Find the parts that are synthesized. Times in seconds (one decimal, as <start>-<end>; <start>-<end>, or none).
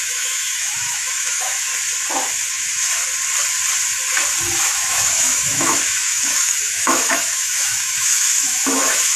0.0-1.7; 2.5-3.0; 4.6-9.2